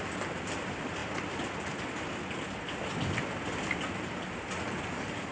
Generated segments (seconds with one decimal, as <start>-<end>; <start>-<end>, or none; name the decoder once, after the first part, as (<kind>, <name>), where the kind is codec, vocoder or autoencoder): none